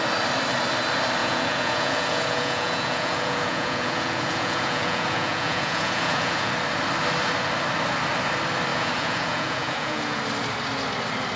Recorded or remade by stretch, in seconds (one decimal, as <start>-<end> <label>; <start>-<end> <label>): 0.0-1.2 recorded; 1.2-6.5 remade; 6.5-8.7 recorded; 8.7-10.2 remade; 10.2-11.4 recorded